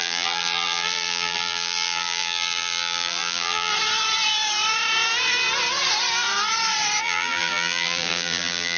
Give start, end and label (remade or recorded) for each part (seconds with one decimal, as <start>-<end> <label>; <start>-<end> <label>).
0.0-3.7 remade; 3.7-7.0 recorded; 7.0-8.8 remade